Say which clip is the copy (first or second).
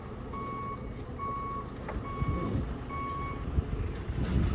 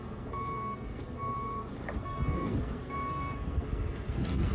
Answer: second